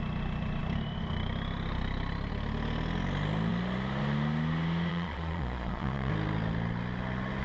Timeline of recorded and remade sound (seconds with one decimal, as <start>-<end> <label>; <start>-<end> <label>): 0.0-4.9 recorded; 4.9-6.1 remade; 6.1-7.4 recorded